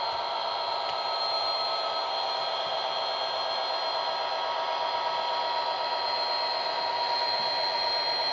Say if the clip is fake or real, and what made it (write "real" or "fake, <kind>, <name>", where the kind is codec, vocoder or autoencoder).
real